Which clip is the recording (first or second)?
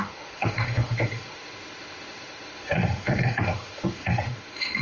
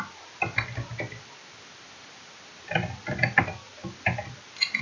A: second